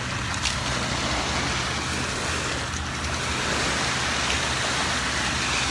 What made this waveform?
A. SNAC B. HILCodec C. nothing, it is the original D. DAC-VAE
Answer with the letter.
C